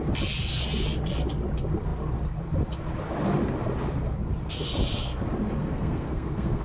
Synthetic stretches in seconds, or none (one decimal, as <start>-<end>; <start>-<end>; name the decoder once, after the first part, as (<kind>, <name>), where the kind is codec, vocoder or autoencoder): 5.6-6.6 (codec, SNAC)